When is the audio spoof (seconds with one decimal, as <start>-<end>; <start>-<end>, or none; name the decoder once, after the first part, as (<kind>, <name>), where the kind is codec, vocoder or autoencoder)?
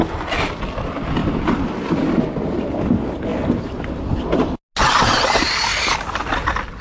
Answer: 3.3-4.0 (vocoder, BigVGAN v2)